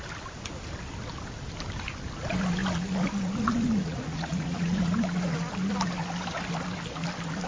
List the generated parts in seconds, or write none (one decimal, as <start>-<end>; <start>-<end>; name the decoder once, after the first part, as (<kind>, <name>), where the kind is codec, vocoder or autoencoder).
3.8-5.1 (vocoder, Vocos)